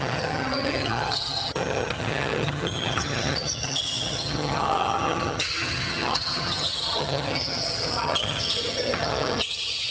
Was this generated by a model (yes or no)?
yes